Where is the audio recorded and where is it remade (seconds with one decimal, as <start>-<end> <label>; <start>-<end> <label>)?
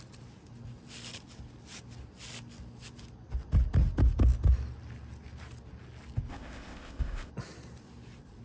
0.0-6.3 recorded; 6.3-7.3 remade; 7.3-8.4 recorded